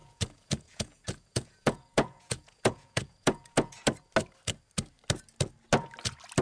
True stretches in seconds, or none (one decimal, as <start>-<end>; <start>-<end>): 3.8-6.4